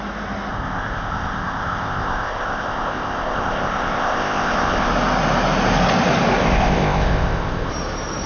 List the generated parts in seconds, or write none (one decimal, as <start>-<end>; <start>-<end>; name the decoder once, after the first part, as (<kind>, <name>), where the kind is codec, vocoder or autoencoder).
0.5-4.9 (codec, ZipCodec); 6.4-7.7

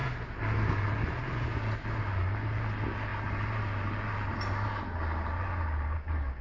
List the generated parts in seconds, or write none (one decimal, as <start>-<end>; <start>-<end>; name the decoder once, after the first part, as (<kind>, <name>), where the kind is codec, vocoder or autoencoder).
none